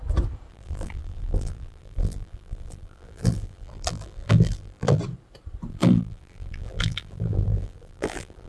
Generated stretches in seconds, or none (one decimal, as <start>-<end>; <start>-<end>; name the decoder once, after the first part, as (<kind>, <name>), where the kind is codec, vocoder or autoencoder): 0.5-5.0 (vocoder, BigVGAN v2); 5.7-8.5